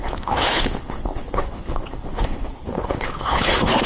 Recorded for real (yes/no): no